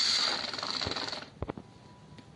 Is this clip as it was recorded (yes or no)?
yes